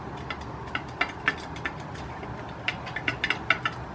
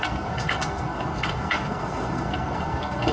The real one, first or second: first